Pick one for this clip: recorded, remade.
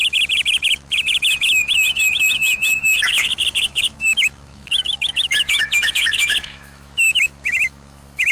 remade